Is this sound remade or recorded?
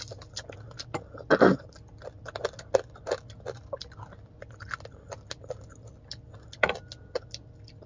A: recorded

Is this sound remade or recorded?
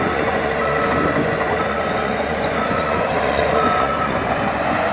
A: remade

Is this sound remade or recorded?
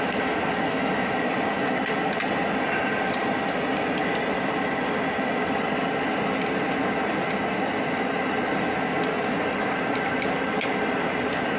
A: recorded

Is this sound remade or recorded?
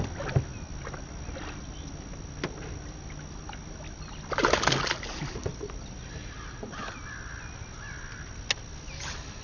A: recorded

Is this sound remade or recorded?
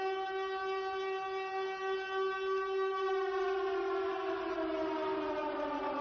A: recorded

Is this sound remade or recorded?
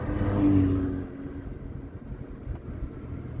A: recorded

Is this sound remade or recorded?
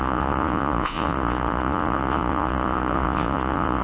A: remade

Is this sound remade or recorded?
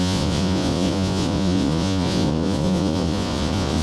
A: remade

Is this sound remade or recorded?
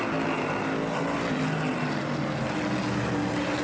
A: recorded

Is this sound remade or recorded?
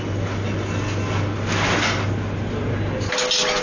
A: recorded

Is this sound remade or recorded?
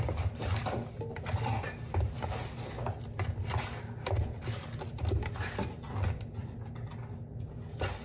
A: recorded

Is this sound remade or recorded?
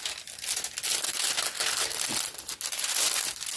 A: recorded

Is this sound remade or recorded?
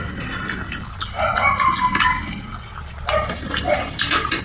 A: recorded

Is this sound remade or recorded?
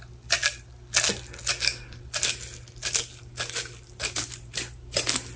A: recorded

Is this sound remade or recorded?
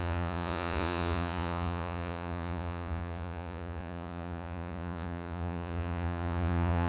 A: remade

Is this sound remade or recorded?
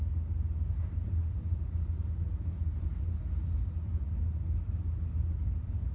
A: recorded